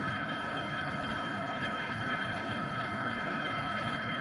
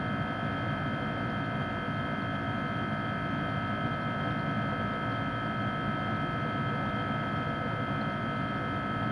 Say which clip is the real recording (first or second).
second